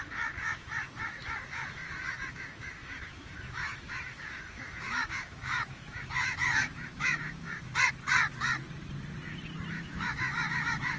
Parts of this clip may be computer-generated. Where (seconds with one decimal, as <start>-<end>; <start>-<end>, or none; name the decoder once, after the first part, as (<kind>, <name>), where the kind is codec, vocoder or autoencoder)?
0.0-7.7 (autoencoder, DAC-VAE); 9.7-11.0